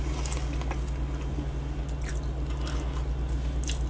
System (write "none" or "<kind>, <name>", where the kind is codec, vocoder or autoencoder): none